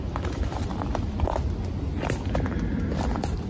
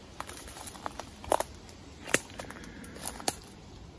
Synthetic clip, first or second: second